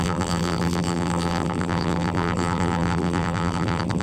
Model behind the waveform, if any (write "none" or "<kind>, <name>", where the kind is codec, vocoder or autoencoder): vocoder, BigVGAN v2